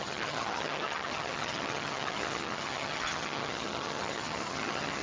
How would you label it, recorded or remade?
remade